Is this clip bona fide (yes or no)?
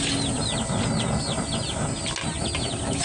yes